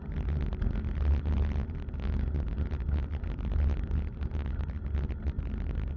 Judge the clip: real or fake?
real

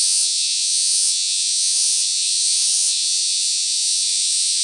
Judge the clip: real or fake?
fake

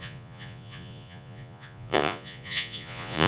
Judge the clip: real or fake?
fake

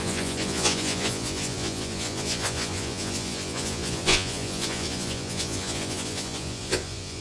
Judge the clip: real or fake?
fake